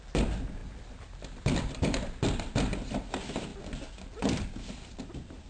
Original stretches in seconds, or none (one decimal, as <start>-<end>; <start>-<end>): 0.0-5.5